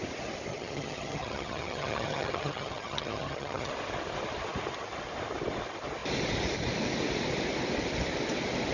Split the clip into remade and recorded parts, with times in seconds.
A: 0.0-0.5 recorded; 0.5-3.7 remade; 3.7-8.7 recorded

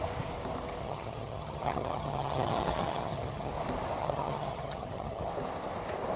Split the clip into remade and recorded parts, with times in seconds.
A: 0.0-0.8 recorded; 0.8-3.5 remade; 3.5-4.0 recorded; 4.0-5.3 remade; 5.3-6.2 recorded